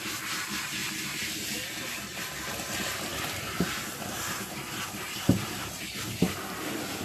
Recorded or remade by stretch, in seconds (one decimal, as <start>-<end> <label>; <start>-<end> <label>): 0.0-0.8 recorded; 0.8-2.5 remade; 2.5-3.1 recorded; 3.1-5.7 remade; 5.7-7.0 recorded